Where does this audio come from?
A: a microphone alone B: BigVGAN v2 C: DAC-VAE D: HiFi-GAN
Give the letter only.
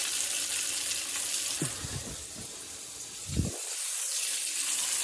A